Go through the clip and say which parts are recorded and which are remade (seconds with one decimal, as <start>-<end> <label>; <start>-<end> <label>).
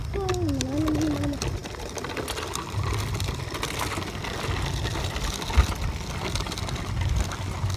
0.0-7.8 recorded